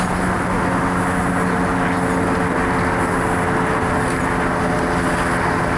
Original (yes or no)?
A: yes